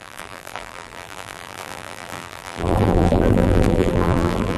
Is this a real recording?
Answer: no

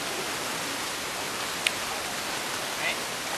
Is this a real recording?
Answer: yes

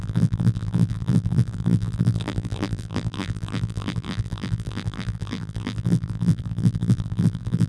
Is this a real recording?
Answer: no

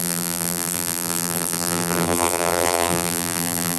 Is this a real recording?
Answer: no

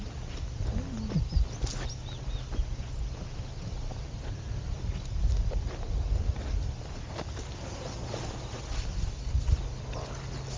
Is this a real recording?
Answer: yes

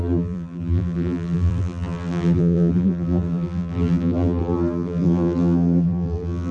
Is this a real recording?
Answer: no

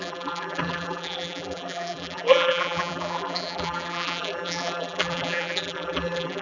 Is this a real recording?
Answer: no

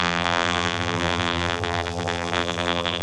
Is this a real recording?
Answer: no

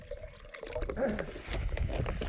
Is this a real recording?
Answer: yes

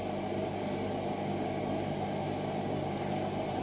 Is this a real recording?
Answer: yes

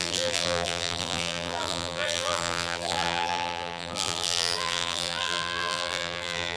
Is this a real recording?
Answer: no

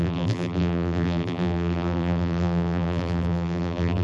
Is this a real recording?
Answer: no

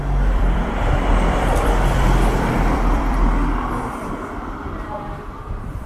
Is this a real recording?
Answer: no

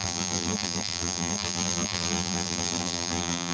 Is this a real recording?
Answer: no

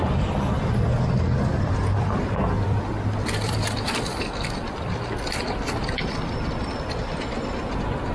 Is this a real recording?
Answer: no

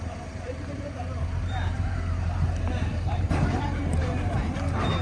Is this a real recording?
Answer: no